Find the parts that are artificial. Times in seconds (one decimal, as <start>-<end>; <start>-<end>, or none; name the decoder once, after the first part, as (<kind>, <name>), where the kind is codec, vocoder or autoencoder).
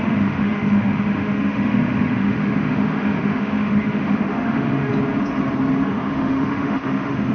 0.0-4.9 (autoencoder, DAC-VAE); 5.9-7.3